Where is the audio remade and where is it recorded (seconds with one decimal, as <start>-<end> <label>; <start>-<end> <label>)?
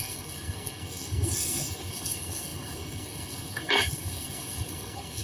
0.0-5.2 remade